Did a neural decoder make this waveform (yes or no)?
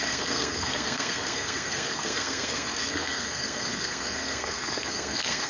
yes